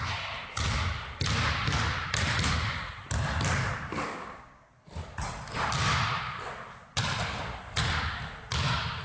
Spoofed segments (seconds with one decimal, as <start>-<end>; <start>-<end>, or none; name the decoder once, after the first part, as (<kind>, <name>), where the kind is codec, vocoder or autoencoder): 4.1-4.7 (codec, DAC)